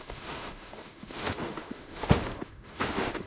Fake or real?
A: fake